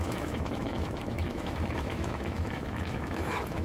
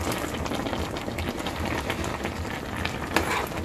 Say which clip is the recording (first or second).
second